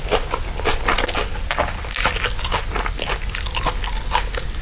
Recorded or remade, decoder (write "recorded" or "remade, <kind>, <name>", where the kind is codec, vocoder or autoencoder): recorded